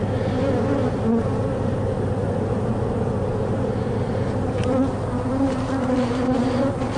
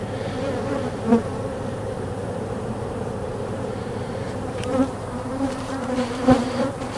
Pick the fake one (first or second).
second